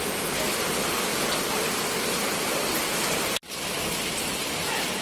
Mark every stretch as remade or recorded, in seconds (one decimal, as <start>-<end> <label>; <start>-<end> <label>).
0.0-5.0 recorded